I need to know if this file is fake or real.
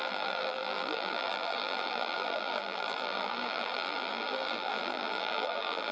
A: fake